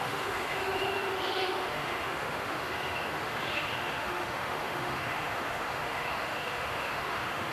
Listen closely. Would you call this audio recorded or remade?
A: remade